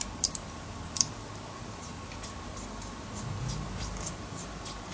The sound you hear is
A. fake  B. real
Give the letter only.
B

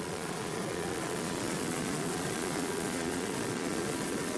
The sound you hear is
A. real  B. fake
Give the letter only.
B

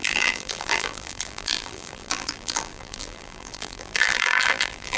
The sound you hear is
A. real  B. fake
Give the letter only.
B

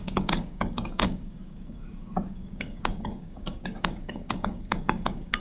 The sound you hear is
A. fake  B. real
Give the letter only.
A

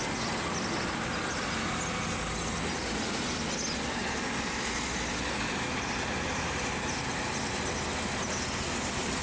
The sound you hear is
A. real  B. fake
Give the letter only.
A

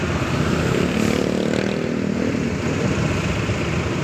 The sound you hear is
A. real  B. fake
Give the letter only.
A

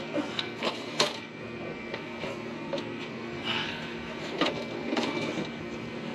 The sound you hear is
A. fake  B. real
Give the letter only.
A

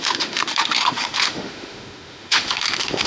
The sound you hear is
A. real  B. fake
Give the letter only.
B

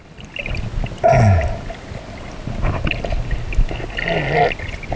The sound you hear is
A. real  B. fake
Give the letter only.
A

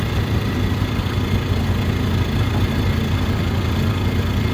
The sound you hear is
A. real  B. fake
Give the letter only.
A